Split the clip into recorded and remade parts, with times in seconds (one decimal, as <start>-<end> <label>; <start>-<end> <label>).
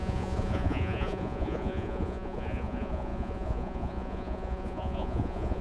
0.0-5.6 remade